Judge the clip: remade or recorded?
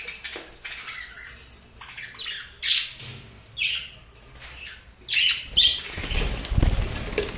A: recorded